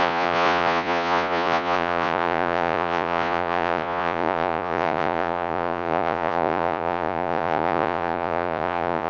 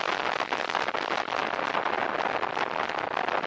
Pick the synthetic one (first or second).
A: first